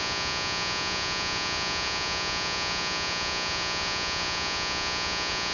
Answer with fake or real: fake